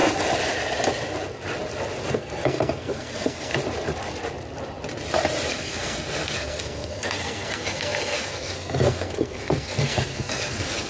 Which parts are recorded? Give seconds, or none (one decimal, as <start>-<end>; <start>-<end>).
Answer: 0.0-2.1; 3.5-5.5